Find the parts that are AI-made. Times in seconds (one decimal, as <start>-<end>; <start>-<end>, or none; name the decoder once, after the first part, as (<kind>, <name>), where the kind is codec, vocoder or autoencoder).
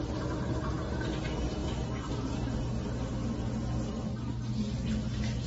none